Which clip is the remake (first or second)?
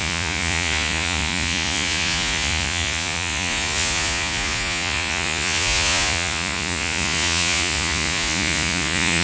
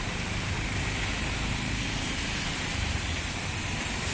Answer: first